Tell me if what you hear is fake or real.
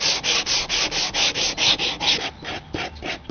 real